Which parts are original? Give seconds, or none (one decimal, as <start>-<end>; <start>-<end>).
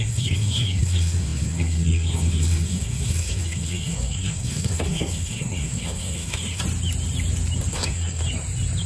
6.6-7.7; 8.2-8.9